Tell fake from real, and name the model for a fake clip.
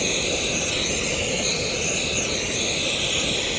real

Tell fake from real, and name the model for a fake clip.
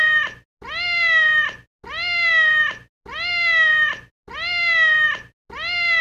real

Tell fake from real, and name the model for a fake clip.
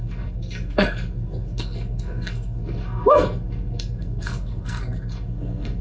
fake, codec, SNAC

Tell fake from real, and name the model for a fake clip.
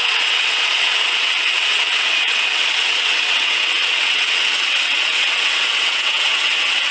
fake, vocoder, WaveNeXt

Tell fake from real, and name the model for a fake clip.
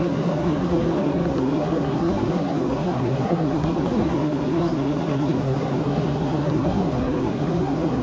fake, codec, SNAC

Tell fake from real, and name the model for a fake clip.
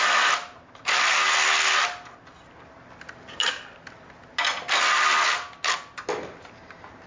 real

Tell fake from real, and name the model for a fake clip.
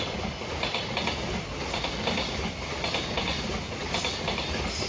real